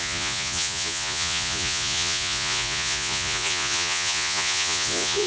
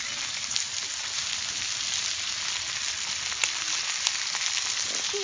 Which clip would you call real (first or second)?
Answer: second